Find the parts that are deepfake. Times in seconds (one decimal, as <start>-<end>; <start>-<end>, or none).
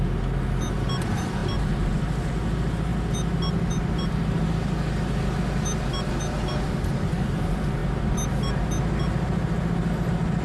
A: none